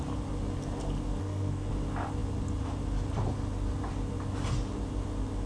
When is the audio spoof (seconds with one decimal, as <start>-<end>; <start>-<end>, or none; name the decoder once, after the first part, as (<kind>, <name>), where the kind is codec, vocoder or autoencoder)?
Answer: 1.2-1.7 (codec, SNAC)